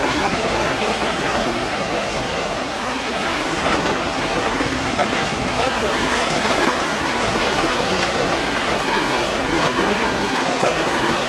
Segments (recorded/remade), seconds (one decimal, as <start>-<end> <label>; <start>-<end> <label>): 0.0-11.3 remade